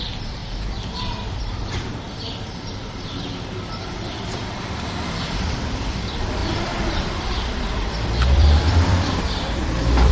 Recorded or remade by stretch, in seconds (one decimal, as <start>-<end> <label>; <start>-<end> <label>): 0.0-0.4 remade; 0.4-1.4 recorded; 1.4-10.1 remade